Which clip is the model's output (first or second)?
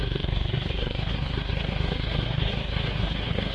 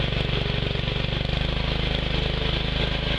first